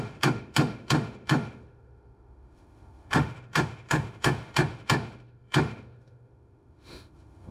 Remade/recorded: remade